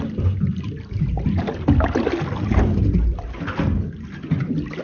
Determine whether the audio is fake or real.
real